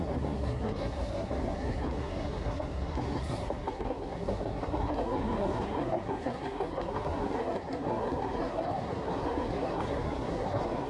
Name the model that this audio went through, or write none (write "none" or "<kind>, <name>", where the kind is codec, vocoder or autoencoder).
codec, SNAC